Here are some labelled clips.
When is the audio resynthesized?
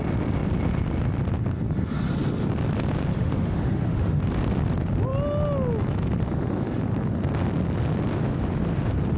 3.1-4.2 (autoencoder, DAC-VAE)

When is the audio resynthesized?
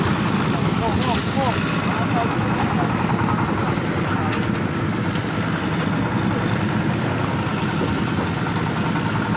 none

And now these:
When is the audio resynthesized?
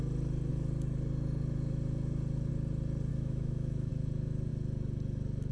3.1-3.9 (autoencoder, DAC-VAE)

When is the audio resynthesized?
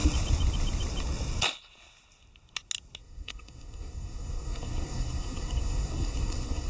3.0-6.7 (codec, SNAC)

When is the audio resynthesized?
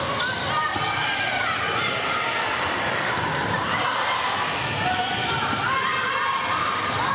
0.7-4.7 (vocoder, BigVGAN v2)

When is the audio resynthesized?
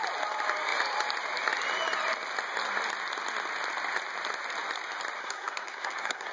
5.2-6.3 (codec, SNAC)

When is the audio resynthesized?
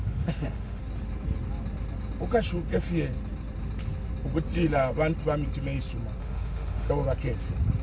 0.0-0.8 (autoencoder, DAC-VAE); 6.2-6.9